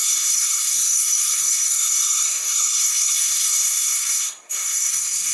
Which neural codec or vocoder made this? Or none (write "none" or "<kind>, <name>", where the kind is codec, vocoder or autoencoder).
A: codec, SNAC